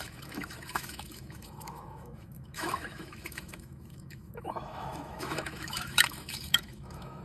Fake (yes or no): yes